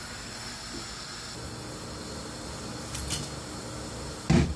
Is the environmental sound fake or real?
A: real